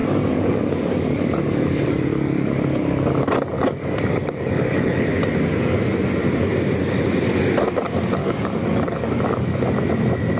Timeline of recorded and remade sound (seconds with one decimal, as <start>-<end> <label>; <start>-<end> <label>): 0.0-5.2 remade; 5.2-8.2 recorded; 8.2-9.7 remade; 9.7-10.4 recorded